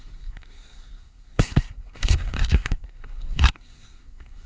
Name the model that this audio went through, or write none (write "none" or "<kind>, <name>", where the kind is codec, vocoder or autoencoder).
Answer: codec, SNAC